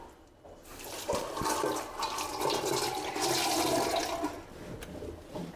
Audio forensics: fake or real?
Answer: real